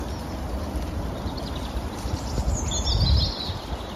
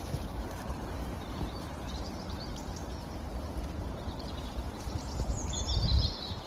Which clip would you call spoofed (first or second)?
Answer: second